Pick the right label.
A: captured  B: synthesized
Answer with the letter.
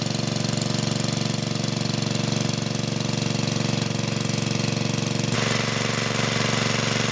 A